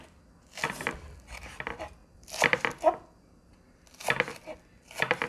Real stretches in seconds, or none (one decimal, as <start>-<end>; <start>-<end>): 0.0-5.3